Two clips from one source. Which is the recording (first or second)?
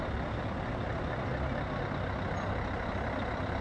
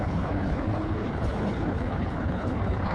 first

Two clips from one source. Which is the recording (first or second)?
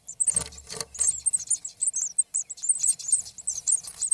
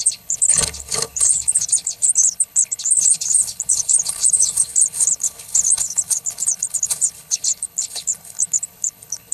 first